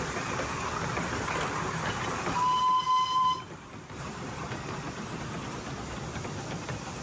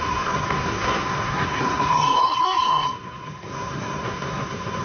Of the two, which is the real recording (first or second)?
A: first